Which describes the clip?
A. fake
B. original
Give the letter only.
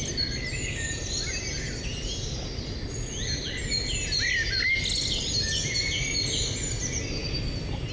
B